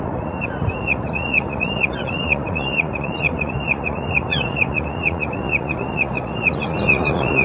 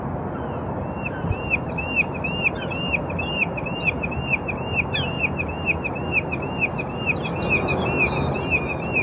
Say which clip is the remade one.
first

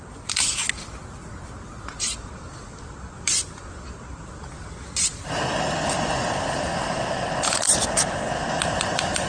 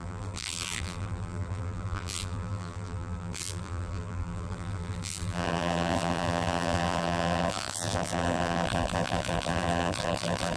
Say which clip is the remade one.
second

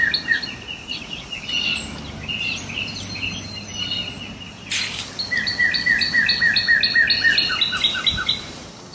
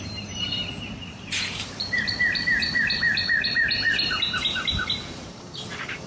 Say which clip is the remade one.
second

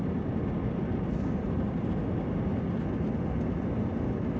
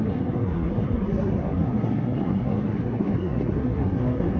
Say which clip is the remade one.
second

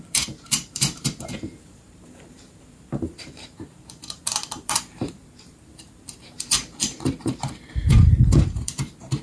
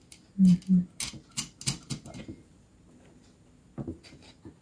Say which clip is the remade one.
first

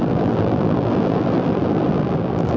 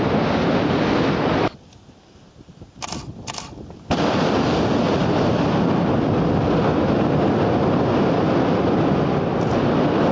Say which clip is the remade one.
first